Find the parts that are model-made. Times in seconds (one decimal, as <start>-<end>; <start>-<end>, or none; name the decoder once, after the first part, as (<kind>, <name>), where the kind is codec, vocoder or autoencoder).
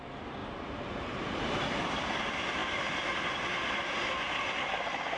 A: 0.4-1.4 (vocoder, BigVGAN v2)